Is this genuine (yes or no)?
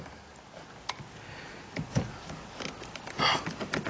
yes